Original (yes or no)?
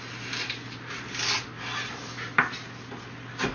yes